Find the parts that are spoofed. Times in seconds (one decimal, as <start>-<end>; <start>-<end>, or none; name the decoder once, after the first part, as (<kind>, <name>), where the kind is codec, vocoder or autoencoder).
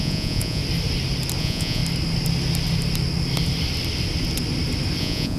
0.0-0.6 (vocoder, Vocos); 1.4-1.8; 5.0-5.4